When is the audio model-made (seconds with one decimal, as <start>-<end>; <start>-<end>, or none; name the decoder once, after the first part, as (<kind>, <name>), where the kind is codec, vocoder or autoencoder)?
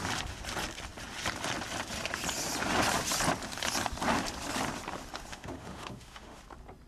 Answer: 5.3-6.4 (autoencoder, DAC-VAE)